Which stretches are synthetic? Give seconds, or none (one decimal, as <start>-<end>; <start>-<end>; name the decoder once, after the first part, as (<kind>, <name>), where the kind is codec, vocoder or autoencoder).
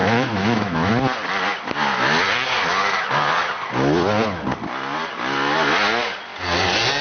0.0-0.9 (autoencoder, DAC-VAE)